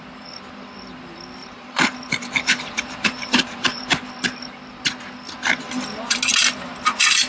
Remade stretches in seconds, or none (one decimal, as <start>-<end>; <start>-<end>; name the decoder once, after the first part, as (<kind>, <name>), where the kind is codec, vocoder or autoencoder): 1.4-3.8 (vocoder, BigVGAN v2)